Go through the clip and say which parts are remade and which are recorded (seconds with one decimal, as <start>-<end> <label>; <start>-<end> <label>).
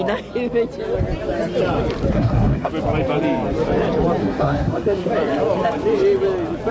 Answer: 0.0-2.1 recorded; 2.1-2.7 remade; 2.7-4.2 recorded; 4.2-5.1 remade; 5.1-6.7 recorded